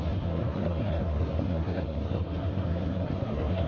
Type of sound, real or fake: fake